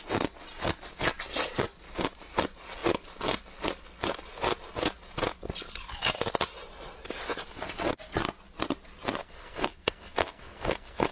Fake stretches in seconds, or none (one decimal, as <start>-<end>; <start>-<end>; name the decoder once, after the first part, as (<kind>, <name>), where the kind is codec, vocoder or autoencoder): 9.2-11.1 (codec, SNAC)